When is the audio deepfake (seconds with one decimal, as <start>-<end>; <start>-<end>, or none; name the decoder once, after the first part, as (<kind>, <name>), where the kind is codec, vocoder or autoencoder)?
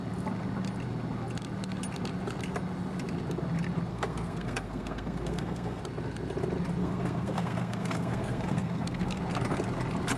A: 3.9-5.8 (codec, SNAC); 6.8-9.2